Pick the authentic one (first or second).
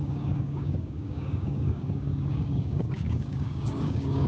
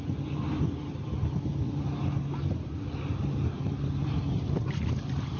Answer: second